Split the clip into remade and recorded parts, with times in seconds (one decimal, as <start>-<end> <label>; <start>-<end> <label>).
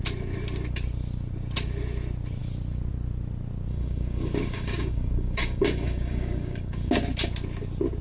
0.0-3.7 recorded; 3.7-6.9 remade; 6.9-8.0 recorded